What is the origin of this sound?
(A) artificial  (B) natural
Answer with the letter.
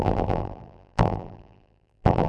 A